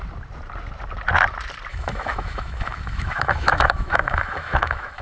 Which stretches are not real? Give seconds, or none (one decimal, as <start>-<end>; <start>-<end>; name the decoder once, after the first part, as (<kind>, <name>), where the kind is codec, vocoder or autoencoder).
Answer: 1.7-5.0 (autoencoder, DAC-VAE)